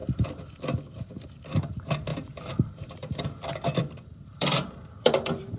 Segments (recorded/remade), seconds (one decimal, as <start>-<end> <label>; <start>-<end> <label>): 0.0-2.1 recorded; 2.1-5.6 remade